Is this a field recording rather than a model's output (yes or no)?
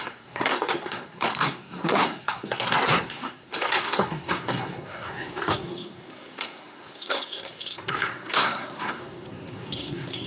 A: no